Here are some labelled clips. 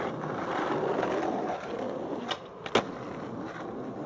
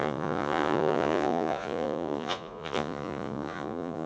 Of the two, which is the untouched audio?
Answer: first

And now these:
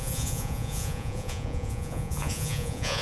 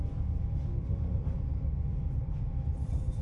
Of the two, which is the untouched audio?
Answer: second